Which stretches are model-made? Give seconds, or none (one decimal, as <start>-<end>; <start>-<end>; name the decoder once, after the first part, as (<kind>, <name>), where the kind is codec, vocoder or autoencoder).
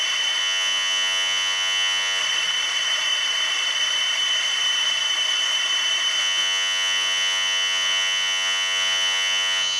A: 0.4-2.2 (vocoder, Vocos); 6.2-9.8